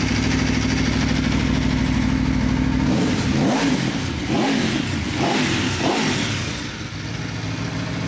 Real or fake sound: real